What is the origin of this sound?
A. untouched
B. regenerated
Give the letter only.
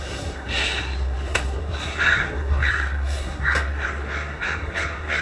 B